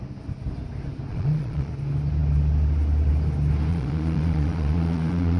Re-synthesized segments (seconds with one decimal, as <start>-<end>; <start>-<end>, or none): 1.1-1.7; 3.7-5.4